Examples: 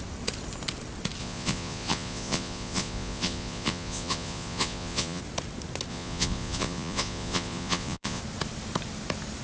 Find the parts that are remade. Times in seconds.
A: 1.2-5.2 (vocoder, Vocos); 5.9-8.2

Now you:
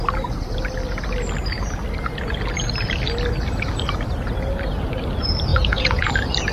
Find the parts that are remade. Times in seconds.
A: 5.5-6.1 (vocoder, Vocos)

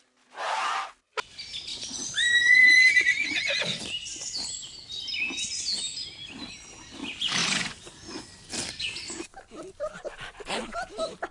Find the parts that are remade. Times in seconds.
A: 1.7-3.8 (vocoder, Vocos); 7.4-8.5